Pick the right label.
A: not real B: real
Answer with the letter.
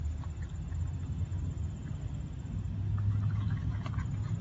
B